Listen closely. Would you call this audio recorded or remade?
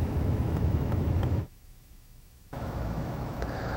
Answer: remade